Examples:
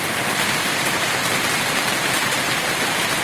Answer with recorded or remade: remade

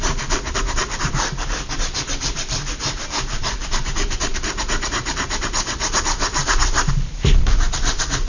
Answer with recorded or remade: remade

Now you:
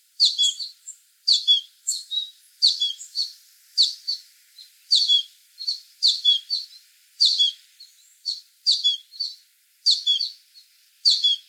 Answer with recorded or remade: remade